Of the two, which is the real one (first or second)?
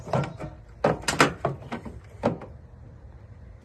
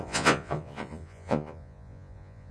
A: first